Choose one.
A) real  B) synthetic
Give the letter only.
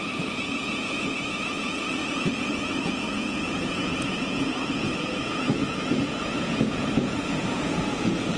B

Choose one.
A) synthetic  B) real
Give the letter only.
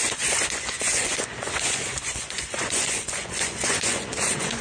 A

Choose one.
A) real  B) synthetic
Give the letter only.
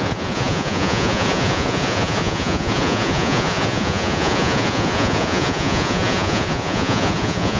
B